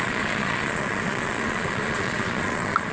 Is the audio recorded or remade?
remade